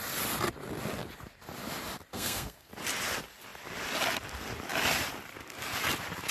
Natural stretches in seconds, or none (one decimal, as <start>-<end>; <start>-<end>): 0.0-2.1; 2.7-6.3